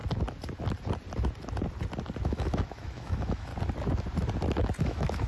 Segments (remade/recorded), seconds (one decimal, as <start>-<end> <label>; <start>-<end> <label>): 0.0-2.2 recorded; 2.2-3.5 remade; 3.5-4.8 recorded; 4.8-5.3 remade